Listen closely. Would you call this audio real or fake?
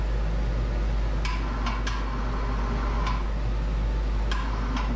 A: real